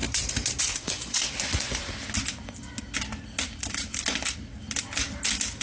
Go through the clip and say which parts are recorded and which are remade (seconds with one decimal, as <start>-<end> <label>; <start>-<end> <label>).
0.0-0.6 recorded; 0.6-1.8 remade; 1.8-5.6 recorded